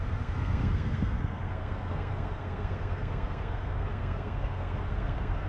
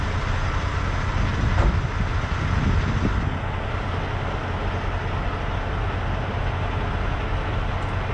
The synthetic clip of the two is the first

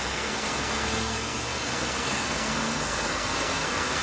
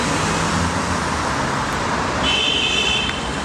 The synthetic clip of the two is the first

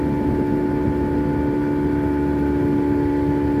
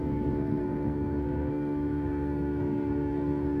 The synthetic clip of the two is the second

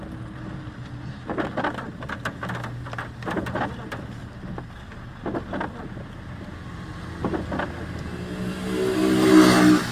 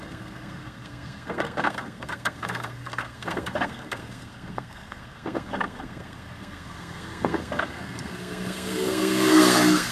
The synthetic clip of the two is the second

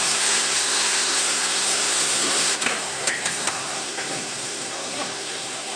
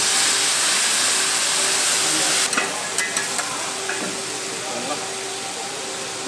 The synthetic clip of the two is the first